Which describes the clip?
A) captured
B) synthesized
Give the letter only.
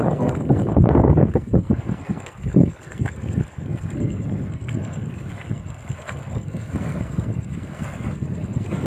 B